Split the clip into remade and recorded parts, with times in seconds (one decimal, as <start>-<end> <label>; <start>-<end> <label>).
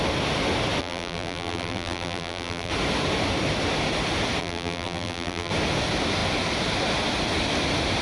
0.0-0.8 recorded; 0.8-2.7 remade; 2.7-4.4 recorded; 4.4-5.5 remade; 5.5-8.0 recorded